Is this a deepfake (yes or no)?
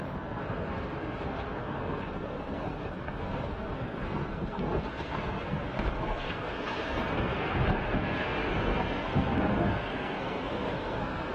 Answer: yes